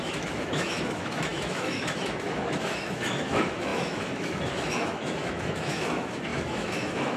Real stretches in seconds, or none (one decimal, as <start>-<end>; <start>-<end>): none